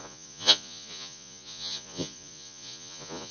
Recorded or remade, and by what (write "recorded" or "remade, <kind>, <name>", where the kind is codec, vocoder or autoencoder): remade, vocoder, Vocos